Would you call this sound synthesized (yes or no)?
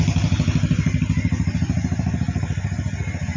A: no